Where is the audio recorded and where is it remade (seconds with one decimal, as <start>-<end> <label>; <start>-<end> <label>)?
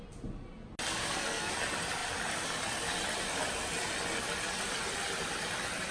0.0-1.0 recorded; 1.0-1.5 remade; 1.5-5.9 recorded